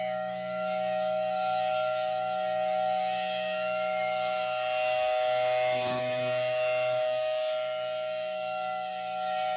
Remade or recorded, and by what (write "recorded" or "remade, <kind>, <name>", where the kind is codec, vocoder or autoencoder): remade, autoencoder, DAC-VAE